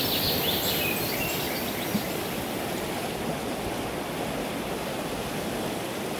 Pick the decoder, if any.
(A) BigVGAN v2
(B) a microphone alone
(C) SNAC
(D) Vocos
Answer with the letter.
B